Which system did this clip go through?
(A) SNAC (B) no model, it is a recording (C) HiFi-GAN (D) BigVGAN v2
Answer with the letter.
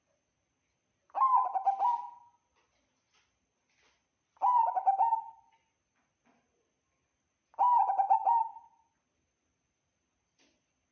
B